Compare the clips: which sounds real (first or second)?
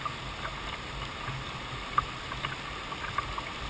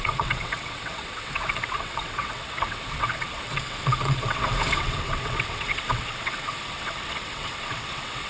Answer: first